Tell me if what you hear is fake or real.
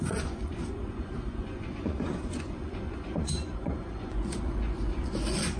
fake